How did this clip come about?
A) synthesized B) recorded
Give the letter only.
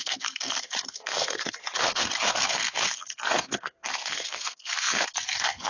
A